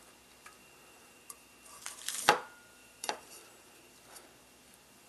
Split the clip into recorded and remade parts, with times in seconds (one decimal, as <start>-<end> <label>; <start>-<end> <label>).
0.0-0.6 recorded; 0.6-1.8 remade; 1.8-2.8 recorded; 2.8-3.9 remade; 3.9-5.1 recorded